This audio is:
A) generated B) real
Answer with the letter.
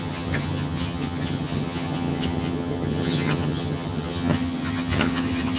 A